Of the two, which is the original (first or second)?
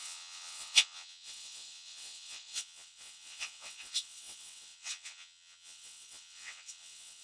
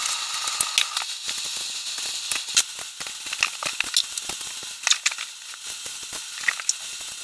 second